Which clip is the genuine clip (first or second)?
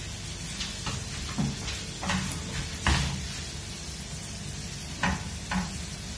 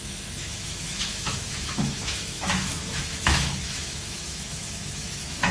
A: first